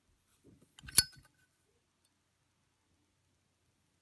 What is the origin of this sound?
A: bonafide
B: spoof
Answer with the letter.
A